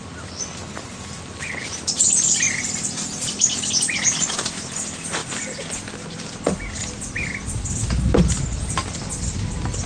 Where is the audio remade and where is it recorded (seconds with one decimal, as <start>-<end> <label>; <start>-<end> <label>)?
0.0-2.0 recorded; 2.0-4.0 remade; 4.0-9.9 recorded